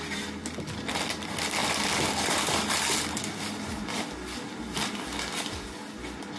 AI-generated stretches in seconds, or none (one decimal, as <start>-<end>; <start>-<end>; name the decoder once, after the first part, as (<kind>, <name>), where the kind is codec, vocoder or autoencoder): none